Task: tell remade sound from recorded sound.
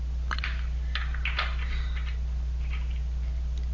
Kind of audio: recorded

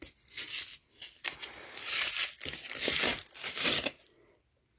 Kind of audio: recorded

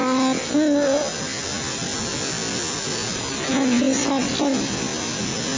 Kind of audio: recorded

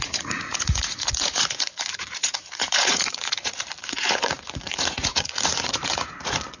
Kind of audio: remade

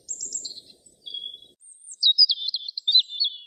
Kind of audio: remade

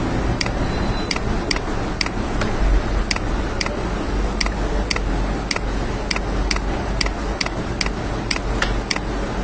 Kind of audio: recorded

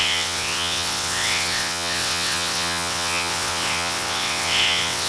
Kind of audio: remade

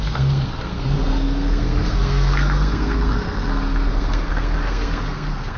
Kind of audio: remade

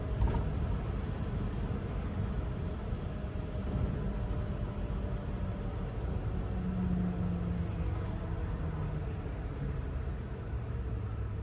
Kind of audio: recorded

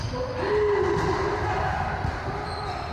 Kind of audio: recorded